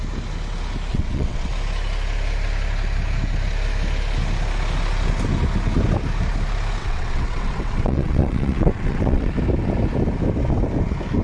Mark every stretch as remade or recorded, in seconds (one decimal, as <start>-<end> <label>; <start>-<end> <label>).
0.0-0.9 recorded; 0.9-1.5 remade; 1.5-6.8 recorded; 6.8-9.3 remade; 9.3-11.2 recorded